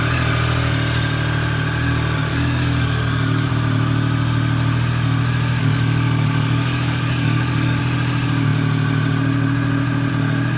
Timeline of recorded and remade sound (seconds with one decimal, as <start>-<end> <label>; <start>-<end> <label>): 0.0-2.3 recorded; 2.3-3.5 remade; 3.5-5.6 recorded; 5.6-7.8 remade; 7.8-10.6 recorded